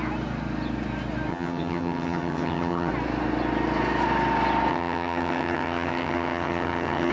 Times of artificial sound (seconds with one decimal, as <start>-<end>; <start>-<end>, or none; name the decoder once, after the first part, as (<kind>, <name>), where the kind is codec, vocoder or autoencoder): 1.3-2.9 (vocoder, HiFi-GAN); 4.7-7.1